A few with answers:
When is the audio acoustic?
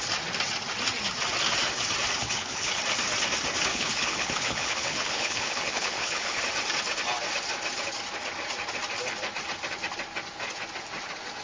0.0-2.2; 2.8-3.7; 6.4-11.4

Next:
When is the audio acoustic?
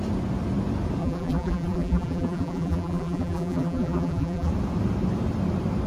0.0-1.0; 4.5-5.9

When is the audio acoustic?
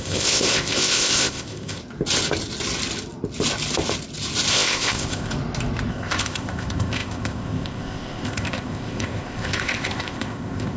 1.8-4.5; 5.3-5.9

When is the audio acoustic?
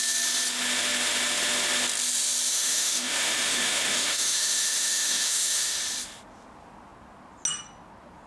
0.0-2.5; 5.8-8.3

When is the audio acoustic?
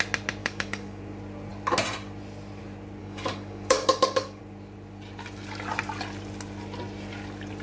0.0-0.4; 1.0-3.0; 4.4-7.6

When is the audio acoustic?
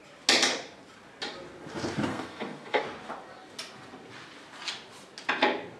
0.0-2.1; 2.8-5.8